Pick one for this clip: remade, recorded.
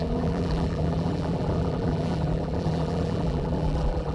remade